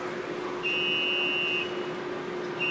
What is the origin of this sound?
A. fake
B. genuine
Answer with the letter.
B